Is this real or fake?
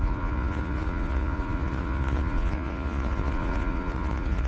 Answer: fake